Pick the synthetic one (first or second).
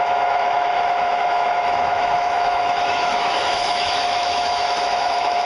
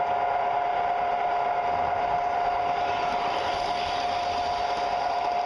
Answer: first